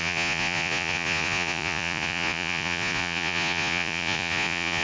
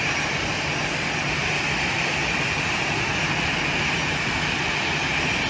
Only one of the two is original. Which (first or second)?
second